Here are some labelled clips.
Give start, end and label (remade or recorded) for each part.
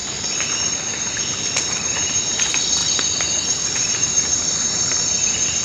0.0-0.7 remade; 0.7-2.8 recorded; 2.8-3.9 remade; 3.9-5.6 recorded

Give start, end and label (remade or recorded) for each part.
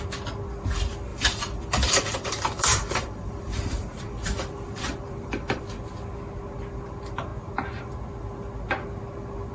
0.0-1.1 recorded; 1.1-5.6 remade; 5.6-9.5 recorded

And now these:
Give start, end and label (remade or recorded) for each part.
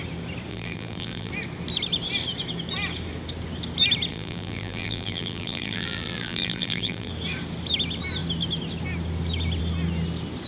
0.0-0.5 recorded; 0.5-1.3 remade; 1.3-4.1 recorded; 4.1-7.1 remade; 7.1-10.5 recorded